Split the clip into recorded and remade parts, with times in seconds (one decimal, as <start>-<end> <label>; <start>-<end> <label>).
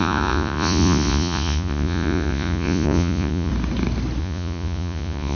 0.0-3.5 remade; 3.5-4.2 recorded; 4.2-5.4 remade